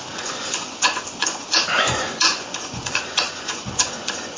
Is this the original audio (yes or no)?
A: no